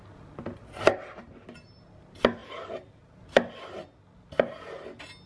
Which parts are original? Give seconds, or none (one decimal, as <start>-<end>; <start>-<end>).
0.0-2.4; 3.2-5.3